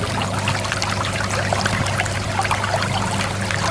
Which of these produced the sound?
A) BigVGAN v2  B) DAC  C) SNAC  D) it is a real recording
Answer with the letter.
D